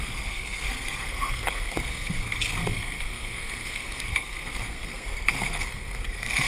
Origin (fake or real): fake